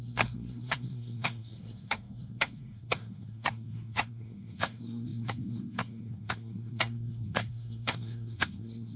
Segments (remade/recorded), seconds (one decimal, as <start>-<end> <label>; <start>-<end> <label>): 0.0-9.0 remade